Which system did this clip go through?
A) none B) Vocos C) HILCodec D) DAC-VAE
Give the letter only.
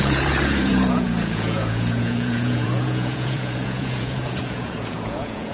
B